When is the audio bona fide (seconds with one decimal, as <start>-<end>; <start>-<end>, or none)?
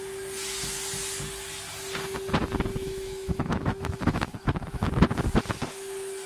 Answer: 0.0-2.7; 4.8-6.3